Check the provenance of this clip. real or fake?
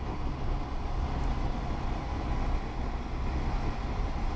real